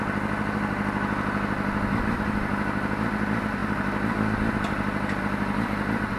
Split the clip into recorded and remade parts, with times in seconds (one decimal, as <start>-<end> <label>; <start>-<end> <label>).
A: 0.0-6.2 recorded